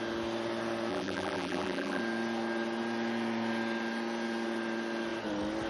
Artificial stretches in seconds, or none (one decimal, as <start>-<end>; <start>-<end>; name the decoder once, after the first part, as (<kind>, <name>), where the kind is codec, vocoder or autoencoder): 0.9-2.0 (vocoder, BigVGAN v2)